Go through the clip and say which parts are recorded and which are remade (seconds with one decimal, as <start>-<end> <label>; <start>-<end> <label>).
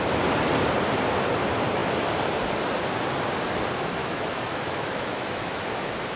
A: 0.0-4.0 recorded; 4.0-5.6 remade; 5.6-6.2 recorded